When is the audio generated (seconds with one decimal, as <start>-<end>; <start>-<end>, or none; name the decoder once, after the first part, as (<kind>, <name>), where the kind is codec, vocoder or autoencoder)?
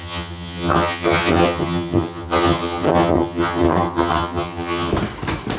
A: 0.0-4.9 (vocoder, HiFi-GAN)